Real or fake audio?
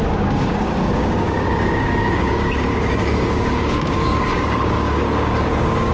fake